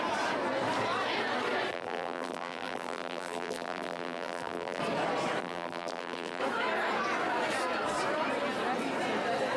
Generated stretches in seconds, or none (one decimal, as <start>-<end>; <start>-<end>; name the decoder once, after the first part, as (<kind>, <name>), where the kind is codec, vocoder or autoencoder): 1.7-4.8 (vocoder, BigVGAN v2); 5.4-6.4